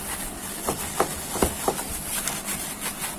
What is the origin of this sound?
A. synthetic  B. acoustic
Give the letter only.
B